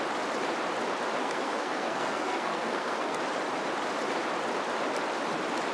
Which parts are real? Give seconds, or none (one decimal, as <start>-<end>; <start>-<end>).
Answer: 0.0-1.2; 3.2-5.7